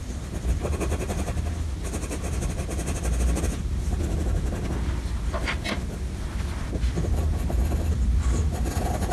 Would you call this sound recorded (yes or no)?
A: yes